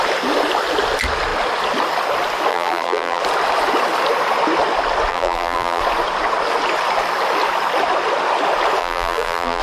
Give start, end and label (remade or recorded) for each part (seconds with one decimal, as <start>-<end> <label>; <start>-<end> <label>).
0.0-2.5 recorded; 2.5-3.2 remade; 3.2-5.1 recorded; 5.1-5.8 remade; 5.8-8.8 recorded; 8.8-9.6 remade